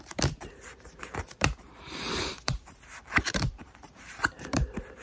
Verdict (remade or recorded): remade